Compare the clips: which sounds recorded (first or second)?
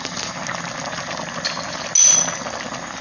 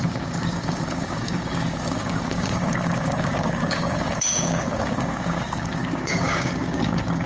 first